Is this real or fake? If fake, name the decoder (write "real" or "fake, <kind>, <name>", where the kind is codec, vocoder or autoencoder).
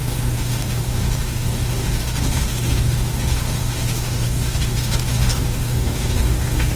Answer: fake, codec, DAC